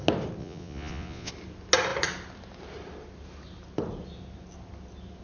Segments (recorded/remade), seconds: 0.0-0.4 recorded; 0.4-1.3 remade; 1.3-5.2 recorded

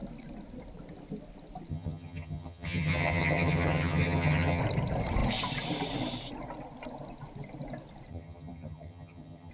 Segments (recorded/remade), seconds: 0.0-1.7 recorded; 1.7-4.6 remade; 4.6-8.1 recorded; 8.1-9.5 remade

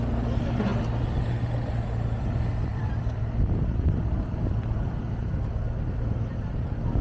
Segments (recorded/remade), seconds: 0.0-2.7 recorded; 2.7-7.0 remade

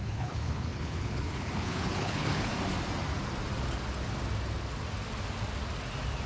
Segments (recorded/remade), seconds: 0.0-2.5 remade; 2.5-6.3 recorded